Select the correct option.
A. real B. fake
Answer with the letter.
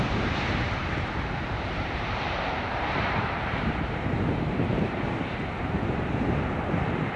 B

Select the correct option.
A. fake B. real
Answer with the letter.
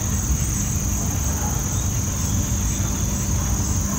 B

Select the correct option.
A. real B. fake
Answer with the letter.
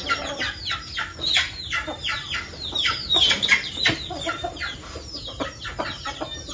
B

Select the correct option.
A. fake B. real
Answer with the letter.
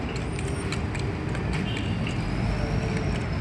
B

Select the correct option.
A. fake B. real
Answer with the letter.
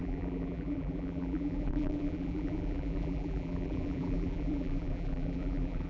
A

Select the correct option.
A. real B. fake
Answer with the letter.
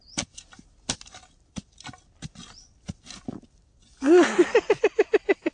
A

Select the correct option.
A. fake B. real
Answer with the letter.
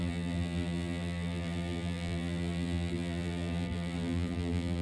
A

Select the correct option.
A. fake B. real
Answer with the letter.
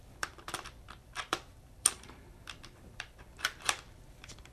A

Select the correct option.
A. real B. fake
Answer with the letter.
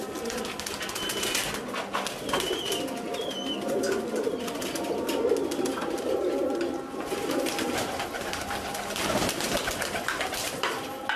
A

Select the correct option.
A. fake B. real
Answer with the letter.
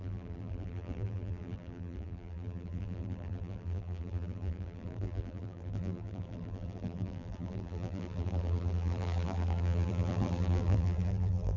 A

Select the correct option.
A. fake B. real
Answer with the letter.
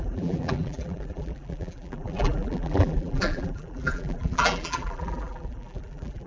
A